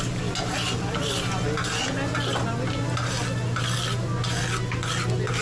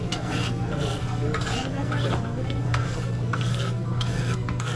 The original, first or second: first